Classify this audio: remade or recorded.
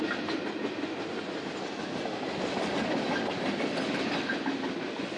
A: recorded